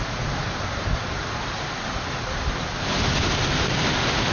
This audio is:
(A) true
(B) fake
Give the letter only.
A